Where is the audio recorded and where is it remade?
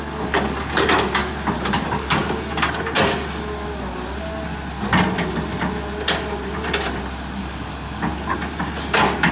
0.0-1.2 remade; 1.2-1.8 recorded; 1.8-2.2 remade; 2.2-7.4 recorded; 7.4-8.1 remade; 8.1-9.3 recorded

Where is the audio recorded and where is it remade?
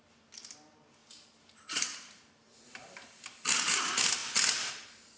0.0-1.0 recorded; 1.0-2.3 remade; 2.3-5.2 recorded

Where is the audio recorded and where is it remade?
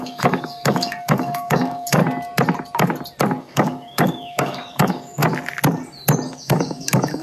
0.0-2.0 remade; 2.0-3.4 recorded; 3.4-5.2 remade; 5.2-6.3 recorded; 6.3-7.2 remade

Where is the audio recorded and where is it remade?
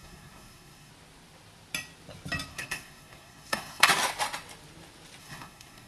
0.0-0.9 remade; 0.9-2.5 recorded; 2.5-3.9 remade; 3.9-5.2 recorded; 5.2-5.9 remade